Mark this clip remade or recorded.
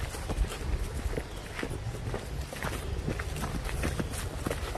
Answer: recorded